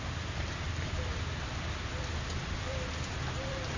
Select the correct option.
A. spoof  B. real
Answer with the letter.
B